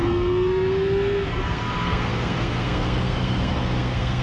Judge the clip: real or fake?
fake